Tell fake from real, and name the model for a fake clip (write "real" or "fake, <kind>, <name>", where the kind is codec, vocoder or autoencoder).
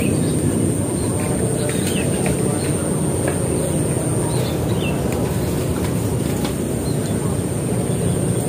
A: real